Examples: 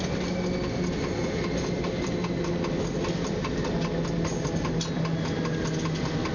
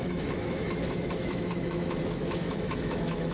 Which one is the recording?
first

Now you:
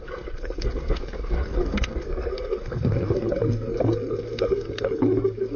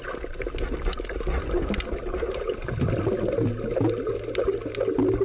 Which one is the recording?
second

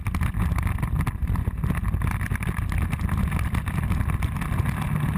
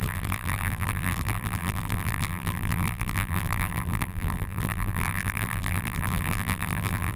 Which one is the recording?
first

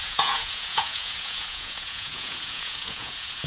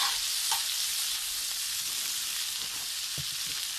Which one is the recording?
second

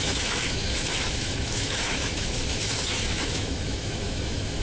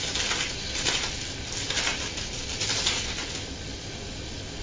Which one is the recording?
second